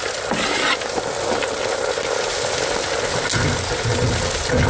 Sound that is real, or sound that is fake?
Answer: real